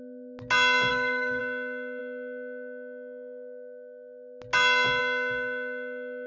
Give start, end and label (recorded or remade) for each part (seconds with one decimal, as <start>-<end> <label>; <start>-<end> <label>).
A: 0.0-0.9 recorded; 0.9-1.4 remade; 1.4-6.3 recorded